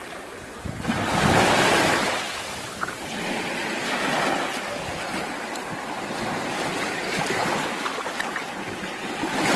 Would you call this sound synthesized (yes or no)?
no